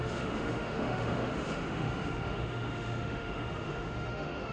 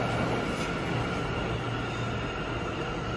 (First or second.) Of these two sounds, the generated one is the first